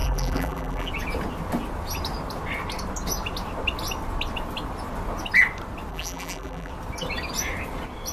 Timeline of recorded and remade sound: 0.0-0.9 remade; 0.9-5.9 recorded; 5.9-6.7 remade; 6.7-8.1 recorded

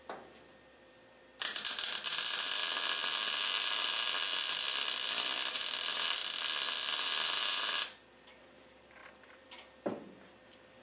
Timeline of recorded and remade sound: 0.0-2.6 remade; 2.6-4.5 recorded; 4.5-10.8 remade

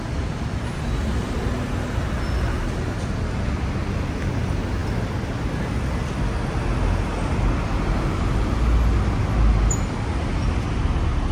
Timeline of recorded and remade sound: 0.0-3.8 recorded; 3.8-4.3 remade; 4.3-11.3 recorded

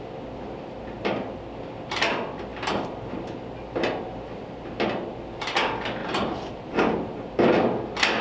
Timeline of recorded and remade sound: 0.0-6.0 recorded; 6.0-6.7 remade; 6.7-8.2 recorded

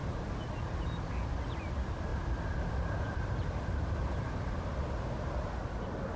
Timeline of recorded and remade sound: 0.0-0.8 recorded; 0.8-6.2 remade

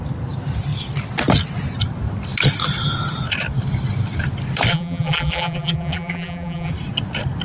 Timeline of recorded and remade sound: 0.0-4.7 recorded; 4.7-6.7 remade; 6.7-7.4 recorded

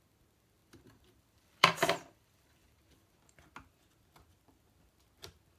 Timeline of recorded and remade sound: 0.0-0.6 recorded; 0.6-3.2 remade; 3.2-5.6 recorded